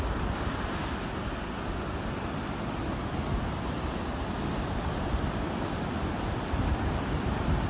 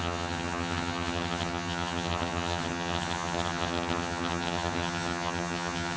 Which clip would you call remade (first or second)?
second